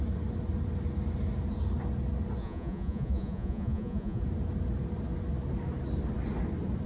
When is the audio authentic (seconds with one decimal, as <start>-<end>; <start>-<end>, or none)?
0.0-2.4; 4.2-6.9